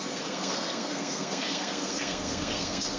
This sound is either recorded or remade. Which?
remade